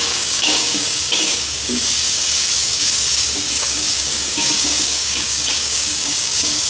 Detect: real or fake fake